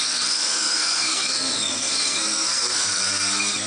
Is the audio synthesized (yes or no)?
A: yes